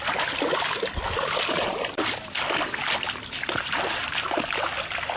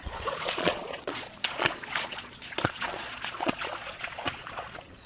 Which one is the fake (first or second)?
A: second